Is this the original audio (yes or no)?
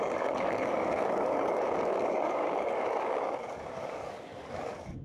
no